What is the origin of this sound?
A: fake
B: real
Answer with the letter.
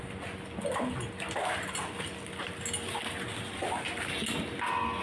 B